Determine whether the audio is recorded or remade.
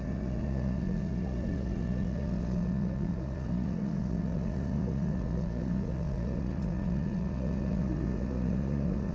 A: remade